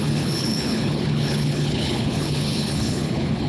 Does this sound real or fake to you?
fake